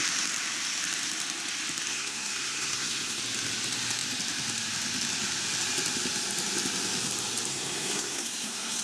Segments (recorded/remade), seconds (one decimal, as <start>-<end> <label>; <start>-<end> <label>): 0.0-1.9 recorded; 1.9-3.2 remade; 3.2-7.5 recorded; 7.5-8.8 remade